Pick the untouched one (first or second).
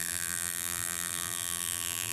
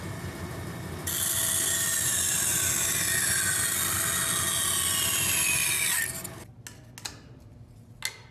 second